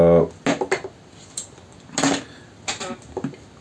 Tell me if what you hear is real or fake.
real